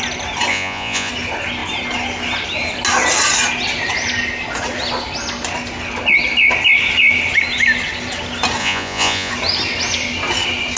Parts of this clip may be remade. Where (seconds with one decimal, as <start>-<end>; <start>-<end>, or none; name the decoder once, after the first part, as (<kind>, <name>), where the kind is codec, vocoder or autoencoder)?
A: 0.5-1.1 (vocoder, Vocos); 8.6-9.3